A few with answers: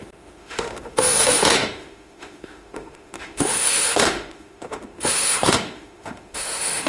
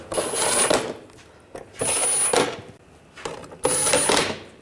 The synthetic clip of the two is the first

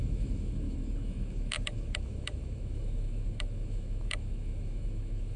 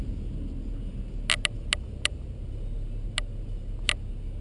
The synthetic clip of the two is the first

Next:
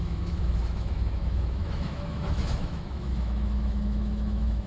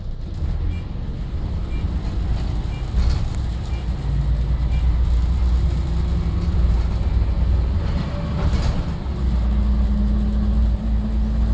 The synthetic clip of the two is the first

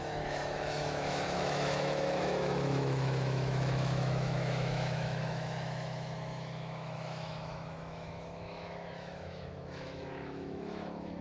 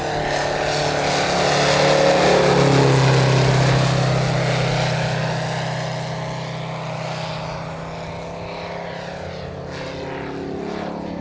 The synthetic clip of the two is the first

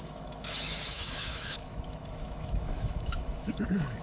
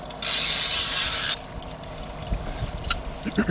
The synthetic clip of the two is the first